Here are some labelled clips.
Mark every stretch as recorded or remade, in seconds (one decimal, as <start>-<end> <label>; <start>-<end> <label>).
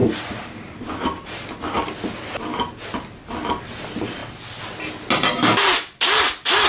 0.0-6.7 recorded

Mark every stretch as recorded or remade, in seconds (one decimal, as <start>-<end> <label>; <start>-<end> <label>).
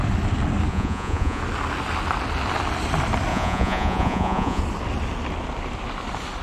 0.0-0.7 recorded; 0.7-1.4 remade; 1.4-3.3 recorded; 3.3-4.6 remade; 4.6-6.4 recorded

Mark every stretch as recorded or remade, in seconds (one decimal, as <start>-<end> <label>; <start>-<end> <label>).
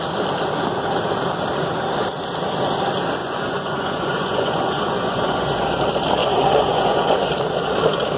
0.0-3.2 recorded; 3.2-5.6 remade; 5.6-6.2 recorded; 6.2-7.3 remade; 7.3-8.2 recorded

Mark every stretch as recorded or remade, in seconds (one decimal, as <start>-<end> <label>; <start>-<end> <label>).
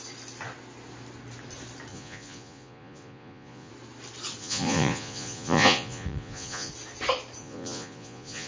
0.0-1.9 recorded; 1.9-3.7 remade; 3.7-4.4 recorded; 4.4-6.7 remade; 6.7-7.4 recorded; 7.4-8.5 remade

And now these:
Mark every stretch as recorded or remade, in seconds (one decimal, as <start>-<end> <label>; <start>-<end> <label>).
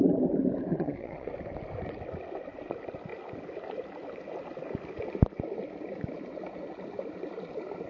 0.0-0.7 recorded; 0.7-1.3 remade; 1.3-7.9 recorded